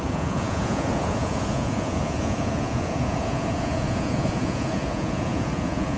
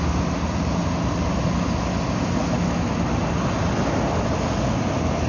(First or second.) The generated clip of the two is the first